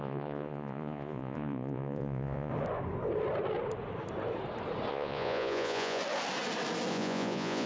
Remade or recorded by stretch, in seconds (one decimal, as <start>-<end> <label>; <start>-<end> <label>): 0.0-2.5 remade; 2.5-4.9 recorded; 4.9-6.0 remade; 6.0-6.9 recorded; 6.9-7.7 remade